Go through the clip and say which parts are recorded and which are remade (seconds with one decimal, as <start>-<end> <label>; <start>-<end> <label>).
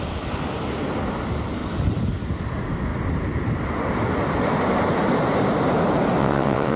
0.0-6.2 recorded; 6.2-6.8 remade